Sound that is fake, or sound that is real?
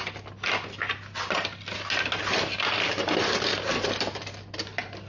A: real